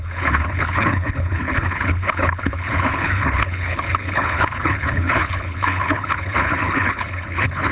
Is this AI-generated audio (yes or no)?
yes